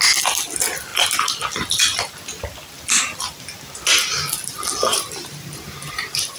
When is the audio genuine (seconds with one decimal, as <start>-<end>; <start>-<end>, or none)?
0.0-4.9